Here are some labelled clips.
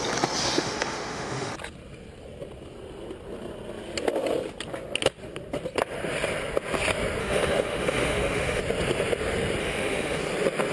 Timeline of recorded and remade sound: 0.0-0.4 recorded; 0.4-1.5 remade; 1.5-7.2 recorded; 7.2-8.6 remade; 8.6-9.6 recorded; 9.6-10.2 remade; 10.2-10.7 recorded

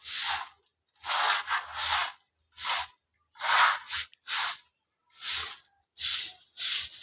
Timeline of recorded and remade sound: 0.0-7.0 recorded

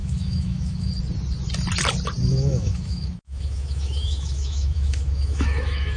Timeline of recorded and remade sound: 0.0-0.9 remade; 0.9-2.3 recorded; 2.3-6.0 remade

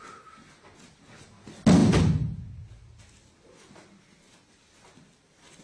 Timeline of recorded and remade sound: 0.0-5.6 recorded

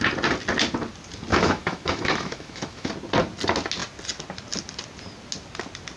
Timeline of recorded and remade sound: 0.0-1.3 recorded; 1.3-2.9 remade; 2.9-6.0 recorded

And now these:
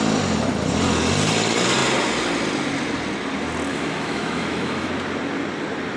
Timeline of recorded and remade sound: 0.0-3.7 recorded; 3.7-4.9 remade; 4.9-6.0 recorded